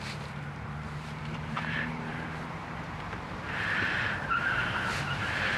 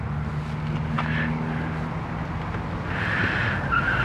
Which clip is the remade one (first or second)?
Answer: first